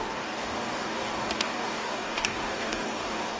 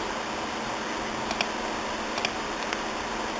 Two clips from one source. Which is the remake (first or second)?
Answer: first